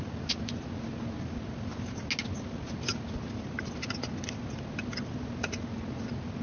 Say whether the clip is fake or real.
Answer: real